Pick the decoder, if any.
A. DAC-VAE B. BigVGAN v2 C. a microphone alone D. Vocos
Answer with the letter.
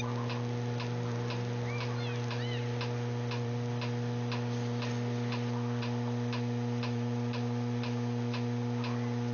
C